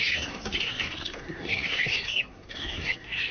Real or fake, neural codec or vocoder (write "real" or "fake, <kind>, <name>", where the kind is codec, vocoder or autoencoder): fake, codec, SNAC